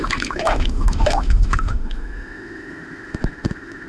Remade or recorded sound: remade